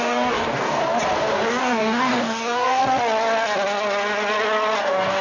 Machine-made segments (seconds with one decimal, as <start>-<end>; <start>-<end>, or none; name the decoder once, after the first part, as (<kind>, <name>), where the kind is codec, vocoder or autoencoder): 0.0-0.8 (codec, DAC); 1.6-2.8; 4.8-5.2